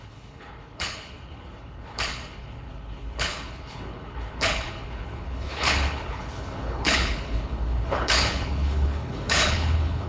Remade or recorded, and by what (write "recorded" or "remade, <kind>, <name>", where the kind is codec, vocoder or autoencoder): remade, codec, HILCodec